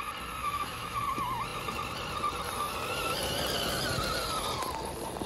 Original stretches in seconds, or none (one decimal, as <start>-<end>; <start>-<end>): 0.0-0.4; 1.0-5.3